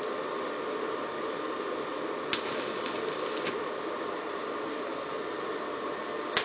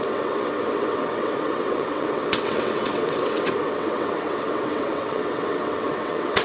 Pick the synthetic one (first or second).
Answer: second